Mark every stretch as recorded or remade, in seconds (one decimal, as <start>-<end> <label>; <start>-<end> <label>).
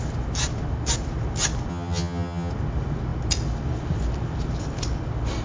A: 0.0-1.7 recorded; 1.7-2.5 remade; 2.5-5.4 recorded